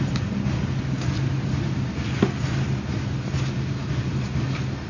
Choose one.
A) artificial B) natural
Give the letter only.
B